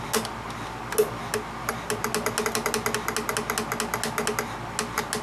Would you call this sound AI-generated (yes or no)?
no